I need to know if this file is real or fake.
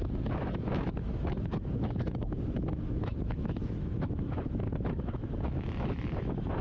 fake